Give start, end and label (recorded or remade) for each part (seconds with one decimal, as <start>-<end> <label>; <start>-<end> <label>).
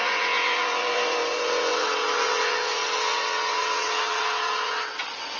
0.0-5.4 remade